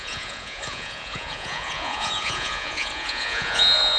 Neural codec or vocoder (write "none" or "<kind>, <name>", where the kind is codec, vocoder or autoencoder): vocoder, Vocos